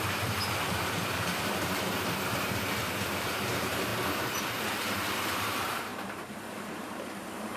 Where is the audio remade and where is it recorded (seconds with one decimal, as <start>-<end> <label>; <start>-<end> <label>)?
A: 0.0-3.9 remade; 3.9-4.6 recorded; 4.6-7.6 remade